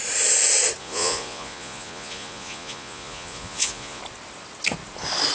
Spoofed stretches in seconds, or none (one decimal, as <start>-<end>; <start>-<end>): 0.8-4.0